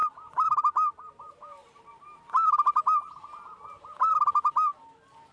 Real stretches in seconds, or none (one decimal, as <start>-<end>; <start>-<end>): 0.6-1.6; 2.8-5.3